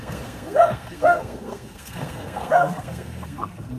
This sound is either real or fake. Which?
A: fake